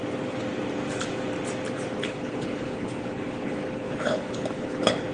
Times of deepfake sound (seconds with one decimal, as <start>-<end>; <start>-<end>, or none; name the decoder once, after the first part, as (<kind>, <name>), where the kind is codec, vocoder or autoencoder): 2.0-5.1 (codec, HILCodec)